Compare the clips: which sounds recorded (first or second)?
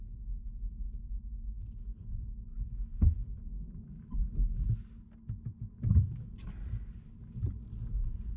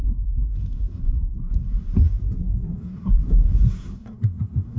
first